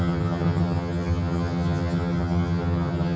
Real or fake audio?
fake